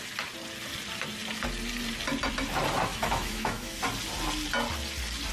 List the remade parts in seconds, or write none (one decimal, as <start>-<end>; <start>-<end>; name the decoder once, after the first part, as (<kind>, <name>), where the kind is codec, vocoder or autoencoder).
2.9-3.8 (autoencoder, DAC-VAE)